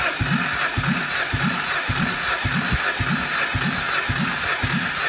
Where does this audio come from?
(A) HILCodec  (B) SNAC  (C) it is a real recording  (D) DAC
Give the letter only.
C